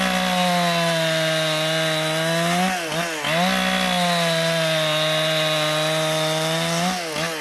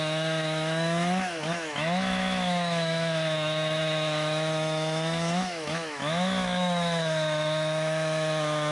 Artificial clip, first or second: second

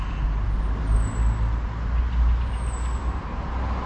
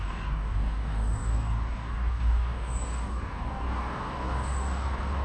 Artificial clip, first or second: second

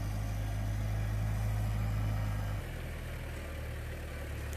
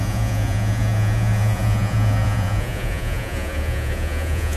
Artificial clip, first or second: second